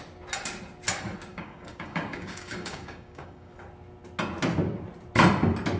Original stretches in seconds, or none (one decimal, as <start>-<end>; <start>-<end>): 0.0-1.3; 3.5-5.8